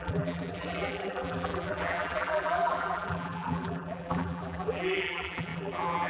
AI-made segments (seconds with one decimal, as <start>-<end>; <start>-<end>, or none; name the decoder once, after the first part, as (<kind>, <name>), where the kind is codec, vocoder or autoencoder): 0.0-6.1 (vocoder, BigVGAN v2)